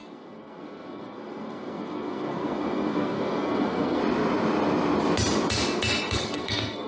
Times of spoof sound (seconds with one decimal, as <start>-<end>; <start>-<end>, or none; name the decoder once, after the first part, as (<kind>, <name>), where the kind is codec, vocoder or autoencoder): 0.0-4.0 (codec, SNAC); 6.1-6.9